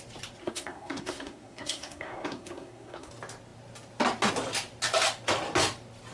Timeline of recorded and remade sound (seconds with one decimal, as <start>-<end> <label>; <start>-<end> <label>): 0.0-0.4 recorded; 0.4-3.1 remade; 3.1-6.1 recorded